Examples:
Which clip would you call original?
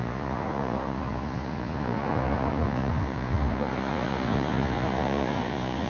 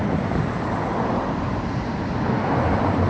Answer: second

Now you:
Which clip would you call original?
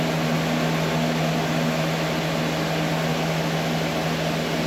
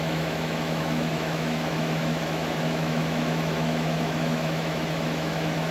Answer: first